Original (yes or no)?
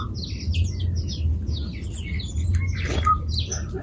yes